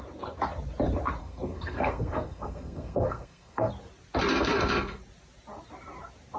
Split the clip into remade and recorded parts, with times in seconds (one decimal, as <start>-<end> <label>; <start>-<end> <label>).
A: 0.0-1.2 recorded; 1.2-3.7 remade; 3.7-4.3 recorded; 4.3-5.0 remade; 5.0-6.4 recorded